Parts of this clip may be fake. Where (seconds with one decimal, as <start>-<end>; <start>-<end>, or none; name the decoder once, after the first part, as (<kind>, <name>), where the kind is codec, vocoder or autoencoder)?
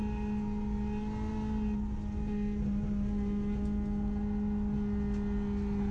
none